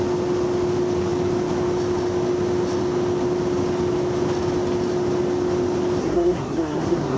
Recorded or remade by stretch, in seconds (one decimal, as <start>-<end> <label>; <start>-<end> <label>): 0.0-6.0 recorded; 6.0-7.2 remade